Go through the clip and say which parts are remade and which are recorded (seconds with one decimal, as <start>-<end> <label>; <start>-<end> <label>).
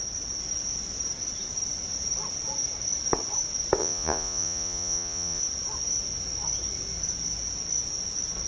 0.0-3.8 recorded; 3.8-5.4 remade; 5.4-8.5 recorded